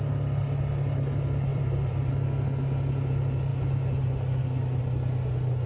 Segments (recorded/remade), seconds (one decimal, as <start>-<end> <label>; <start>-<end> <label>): 0.0-1.5 recorded; 1.5-2.1 remade; 2.1-5.7 recorded